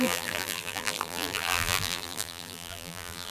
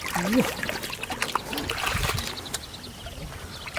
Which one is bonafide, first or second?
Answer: second